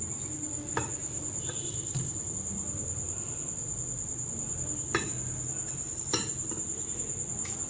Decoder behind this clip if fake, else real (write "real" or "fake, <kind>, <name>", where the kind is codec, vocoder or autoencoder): real